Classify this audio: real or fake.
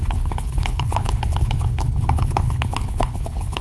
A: fake